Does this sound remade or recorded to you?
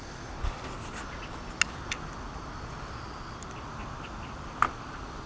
recorded